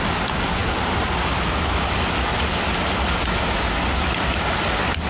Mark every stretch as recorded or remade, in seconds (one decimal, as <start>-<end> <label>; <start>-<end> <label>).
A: 0.0-5.1 recorded